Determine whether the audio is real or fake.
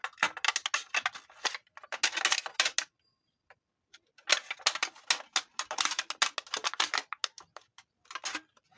real